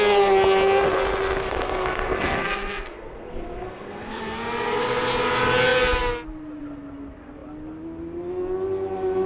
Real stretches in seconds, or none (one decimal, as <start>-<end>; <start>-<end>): 0.0-1.4; 4.2-9.3